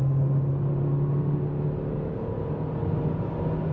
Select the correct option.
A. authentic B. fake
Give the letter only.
A